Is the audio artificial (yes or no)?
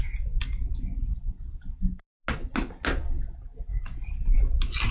no